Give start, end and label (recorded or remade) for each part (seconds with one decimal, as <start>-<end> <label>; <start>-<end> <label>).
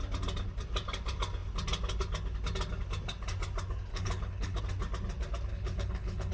0.0-3.9 recorded; 3.9-4.6 remade; 4.6-5.5 recorded; 5.5-6.3 remade